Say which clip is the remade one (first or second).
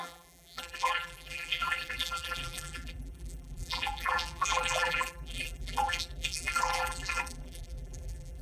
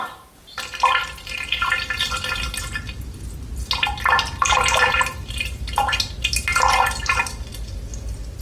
first